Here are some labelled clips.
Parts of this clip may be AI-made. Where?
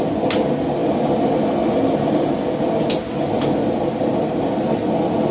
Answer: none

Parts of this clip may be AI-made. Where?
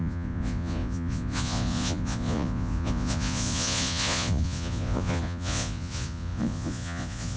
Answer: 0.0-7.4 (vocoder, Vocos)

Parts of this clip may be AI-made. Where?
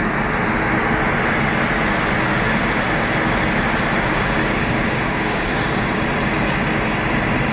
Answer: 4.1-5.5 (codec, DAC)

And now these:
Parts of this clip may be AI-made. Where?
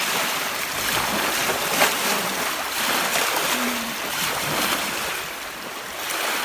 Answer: 1.4-4.8 (vocoder, BigVGAN v2)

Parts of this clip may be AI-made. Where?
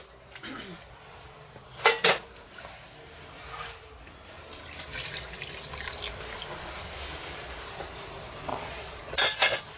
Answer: 8.5-9.0 (vocoder, Vocos)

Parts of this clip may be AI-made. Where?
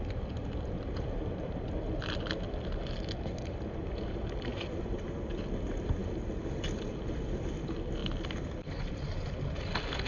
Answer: none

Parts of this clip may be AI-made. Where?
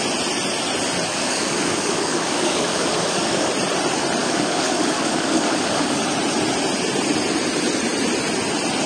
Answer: 1.1-3.5 (codec, DAC); 4.2-6.0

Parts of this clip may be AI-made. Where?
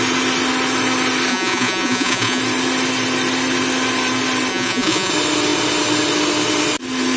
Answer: 1.3-2.4 (vocoder, Vocos); 4.5-5.1